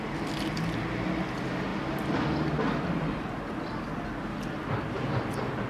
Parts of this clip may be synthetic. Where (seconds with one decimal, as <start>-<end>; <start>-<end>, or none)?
none